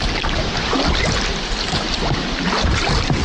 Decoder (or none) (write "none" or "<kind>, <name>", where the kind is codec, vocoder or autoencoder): none